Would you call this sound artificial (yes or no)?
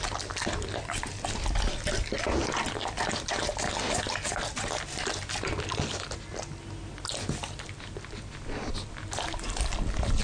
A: no